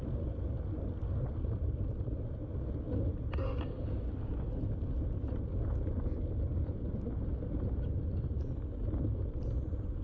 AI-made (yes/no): no